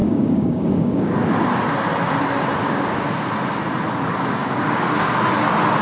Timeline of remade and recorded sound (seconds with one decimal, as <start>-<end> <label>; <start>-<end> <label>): 0.0-1.3 remade; 1.3-2.6 recorded; 2.6-3.3 remade; 3.3-4.4 recorded; 4.4-5.2 remade; 5.2-5.8 recorded